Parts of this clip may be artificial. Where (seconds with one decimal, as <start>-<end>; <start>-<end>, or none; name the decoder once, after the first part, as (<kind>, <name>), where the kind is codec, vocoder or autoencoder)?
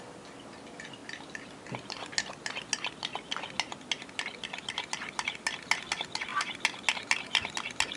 none